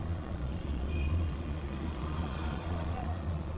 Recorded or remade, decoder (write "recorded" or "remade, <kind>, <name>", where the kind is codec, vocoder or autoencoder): remade, vocoder, Vocos